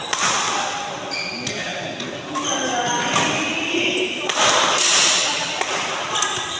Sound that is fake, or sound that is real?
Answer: real